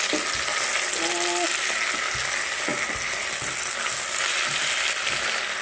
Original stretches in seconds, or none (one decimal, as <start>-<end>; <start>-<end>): 0.0-5.6